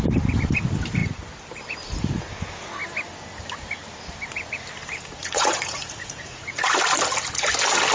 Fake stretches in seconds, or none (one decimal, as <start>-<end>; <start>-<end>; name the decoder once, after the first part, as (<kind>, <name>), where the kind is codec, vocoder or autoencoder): 5.2-6.7 (vocoder, Vocos)